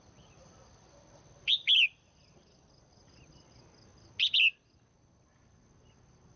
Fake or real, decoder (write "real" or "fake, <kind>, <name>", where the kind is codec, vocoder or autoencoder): real